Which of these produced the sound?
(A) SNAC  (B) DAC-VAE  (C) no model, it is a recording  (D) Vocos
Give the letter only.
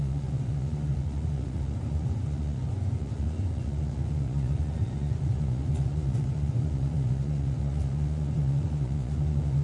D